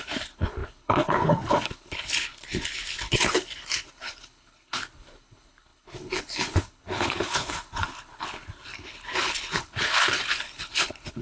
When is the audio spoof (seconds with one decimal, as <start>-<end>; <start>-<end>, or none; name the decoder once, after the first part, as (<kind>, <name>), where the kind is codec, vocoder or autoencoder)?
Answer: 0.0-11.2 (codec, HILCodec)